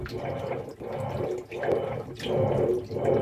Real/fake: fake